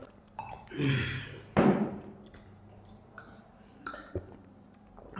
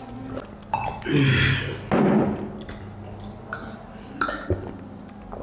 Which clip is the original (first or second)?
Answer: second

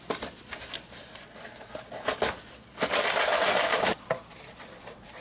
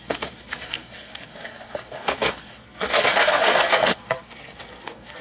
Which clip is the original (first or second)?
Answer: first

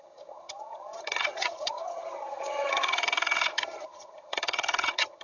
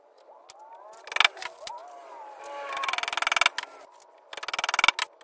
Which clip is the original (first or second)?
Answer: second